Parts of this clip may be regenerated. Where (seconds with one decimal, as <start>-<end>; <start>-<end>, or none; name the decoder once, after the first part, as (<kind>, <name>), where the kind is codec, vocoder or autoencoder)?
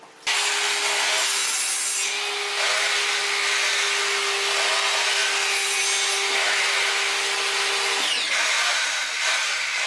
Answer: none